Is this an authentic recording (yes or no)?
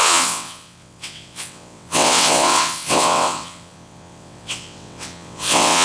no